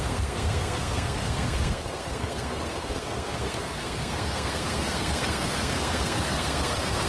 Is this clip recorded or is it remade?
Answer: remade